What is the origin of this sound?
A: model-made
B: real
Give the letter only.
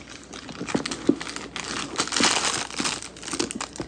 B